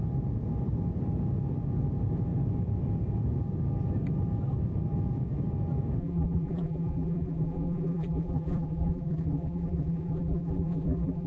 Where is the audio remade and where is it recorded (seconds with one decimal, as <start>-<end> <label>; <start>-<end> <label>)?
0.0-6.0 recorded; 6.0-11.3 remade